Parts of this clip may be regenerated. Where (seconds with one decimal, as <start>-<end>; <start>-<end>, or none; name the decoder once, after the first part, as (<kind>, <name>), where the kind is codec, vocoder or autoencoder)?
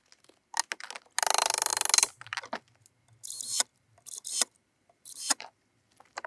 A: 3.7-5.4 (vocoder, BigVGAN v2)